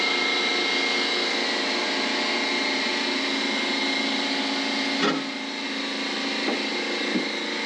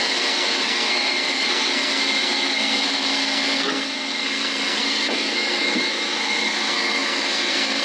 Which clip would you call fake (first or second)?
second